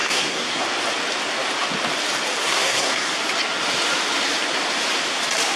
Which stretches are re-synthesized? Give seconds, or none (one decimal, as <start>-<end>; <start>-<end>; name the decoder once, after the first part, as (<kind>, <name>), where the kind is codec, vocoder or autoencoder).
0.0-0.6 (codec, SNAC); 2.4-3.1